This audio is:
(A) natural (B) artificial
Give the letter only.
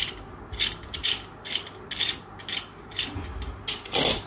A